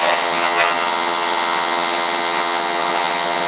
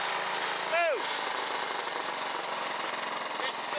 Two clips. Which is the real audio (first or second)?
second